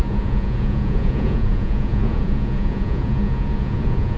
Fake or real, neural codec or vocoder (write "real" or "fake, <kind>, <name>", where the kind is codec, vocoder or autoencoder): fake, vocoder, Vocos